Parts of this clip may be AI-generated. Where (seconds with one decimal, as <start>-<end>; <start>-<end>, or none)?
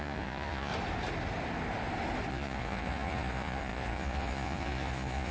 0.0-0.7; 2.3-5.3